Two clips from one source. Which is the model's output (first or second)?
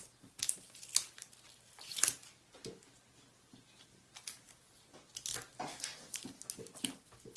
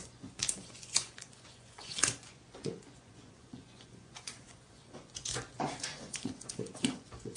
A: second